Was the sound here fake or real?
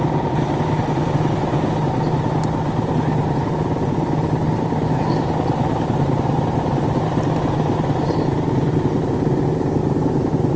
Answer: real